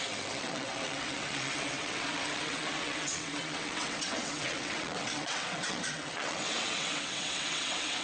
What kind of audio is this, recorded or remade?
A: remade